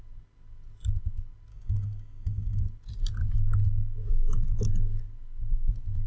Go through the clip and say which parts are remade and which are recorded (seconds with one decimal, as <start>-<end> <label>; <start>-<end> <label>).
0.0-1.5 recorded; 1.5-2.6 remade; 2.6-6.1 recorded